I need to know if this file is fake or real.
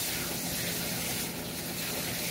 real